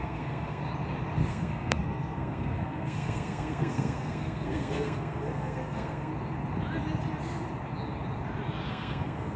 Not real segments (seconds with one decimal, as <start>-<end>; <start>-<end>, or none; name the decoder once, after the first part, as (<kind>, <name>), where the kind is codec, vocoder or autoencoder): 0.0-0.6 (codec, SNAC); 1.3-6.1; 8.7-9.4